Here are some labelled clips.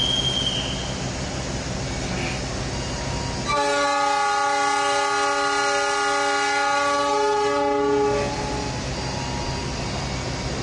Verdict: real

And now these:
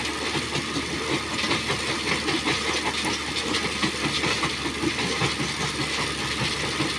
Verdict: real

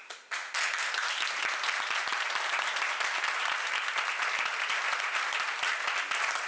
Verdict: real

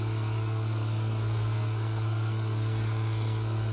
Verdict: fake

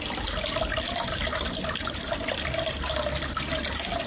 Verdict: real